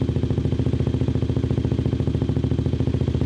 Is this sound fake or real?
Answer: real